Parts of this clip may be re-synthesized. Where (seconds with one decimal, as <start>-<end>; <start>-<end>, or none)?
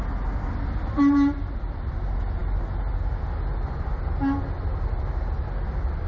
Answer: none